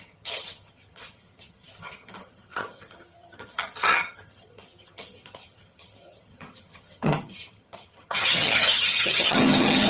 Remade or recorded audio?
remade